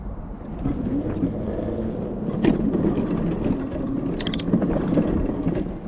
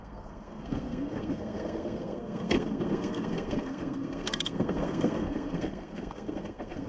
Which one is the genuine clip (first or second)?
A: first